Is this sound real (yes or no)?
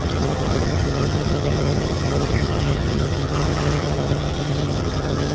no